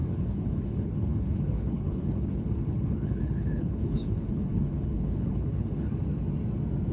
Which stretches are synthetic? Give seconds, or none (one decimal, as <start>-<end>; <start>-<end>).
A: 0.0-5.9